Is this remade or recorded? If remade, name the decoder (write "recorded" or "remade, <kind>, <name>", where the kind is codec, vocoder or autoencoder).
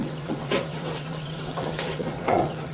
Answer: remade, vocoder, WaveNeXt